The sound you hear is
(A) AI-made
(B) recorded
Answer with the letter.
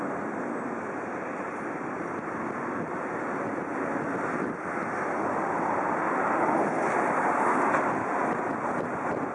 B